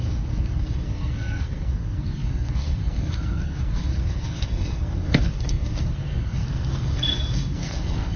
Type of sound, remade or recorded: remade